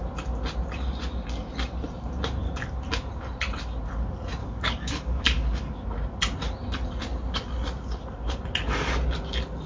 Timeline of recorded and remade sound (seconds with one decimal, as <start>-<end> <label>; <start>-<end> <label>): 0.0-4.4 recorded; 4.4-5.7 remade; 5.7-9.7 recorded